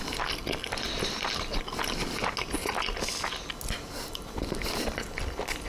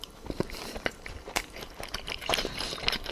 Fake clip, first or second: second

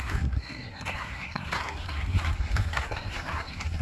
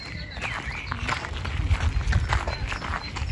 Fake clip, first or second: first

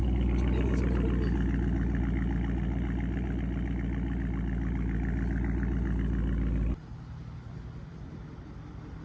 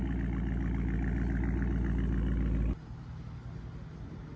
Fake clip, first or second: first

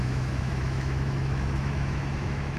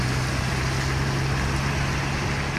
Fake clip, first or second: first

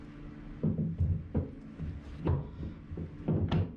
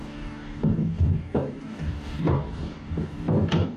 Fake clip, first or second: second